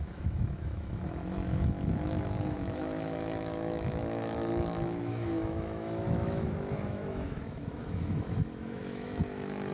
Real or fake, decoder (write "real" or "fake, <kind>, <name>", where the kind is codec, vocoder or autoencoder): fake, autoencoder, DAC-VAE